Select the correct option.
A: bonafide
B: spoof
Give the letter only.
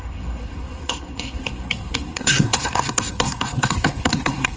B